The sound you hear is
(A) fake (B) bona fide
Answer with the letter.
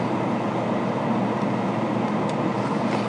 B